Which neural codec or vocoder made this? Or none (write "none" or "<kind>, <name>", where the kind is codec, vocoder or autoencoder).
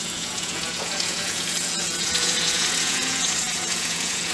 vocoder, Vocos